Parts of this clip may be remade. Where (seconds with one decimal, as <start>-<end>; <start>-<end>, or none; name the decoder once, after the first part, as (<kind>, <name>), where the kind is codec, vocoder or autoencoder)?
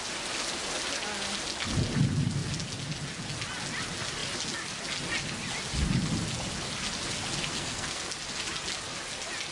7.5-8.1 (codec, SNAC)